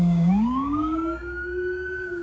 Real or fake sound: fake